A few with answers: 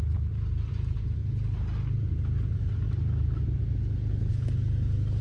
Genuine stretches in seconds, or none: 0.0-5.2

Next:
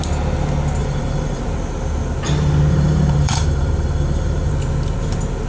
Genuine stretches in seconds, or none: 0.0-0.8; 1.4-2.7; 4.5-5.5

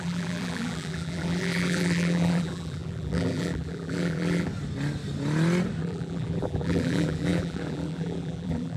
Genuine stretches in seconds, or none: 4.5-5.8

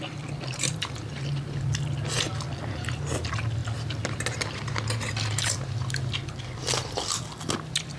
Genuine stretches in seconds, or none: 0.0-8.0

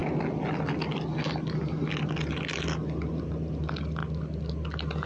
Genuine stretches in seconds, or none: 0.0-5.1

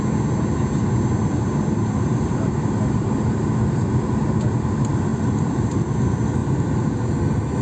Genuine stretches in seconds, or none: 0.0-1.2; 3.4-5.1; 5.8-7.6

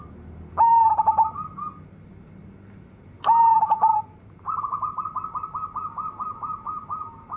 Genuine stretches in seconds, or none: 0.0-0.7; 1.3-3.9